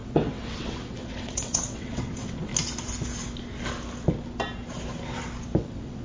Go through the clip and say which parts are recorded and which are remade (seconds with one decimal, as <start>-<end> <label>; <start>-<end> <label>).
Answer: 0.0-2.5 remade; 2.5-5.6 recorded; 5.6-6.0 remade